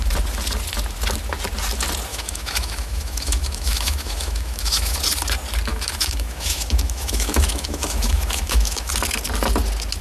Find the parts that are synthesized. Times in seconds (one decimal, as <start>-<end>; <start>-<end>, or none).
2.1-5.0; 5.7-8.9